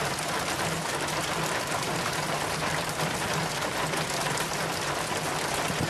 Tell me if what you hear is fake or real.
fake